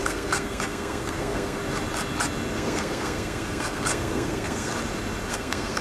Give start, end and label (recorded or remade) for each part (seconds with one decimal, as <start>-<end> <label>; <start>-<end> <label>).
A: 0.0-1.6 remade; 1.6-2.5 recorded; 2.5-4.7 remade; 4.7-5.3 recorded; 5.3-5.8 remade